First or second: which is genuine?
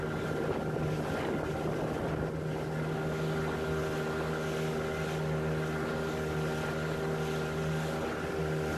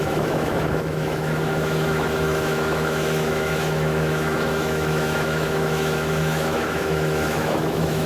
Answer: first